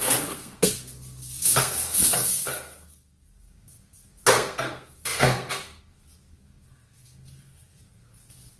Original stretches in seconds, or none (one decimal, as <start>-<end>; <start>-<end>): none